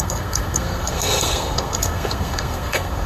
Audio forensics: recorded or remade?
remade